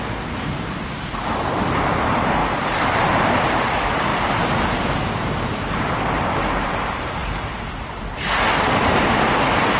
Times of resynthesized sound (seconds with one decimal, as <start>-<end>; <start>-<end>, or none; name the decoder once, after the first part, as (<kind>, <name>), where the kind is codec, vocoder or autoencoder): 0.0-2.4 (vocoder, BigVGAN v2); 2.9-9.8